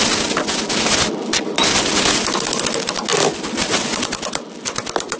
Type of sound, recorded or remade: recorded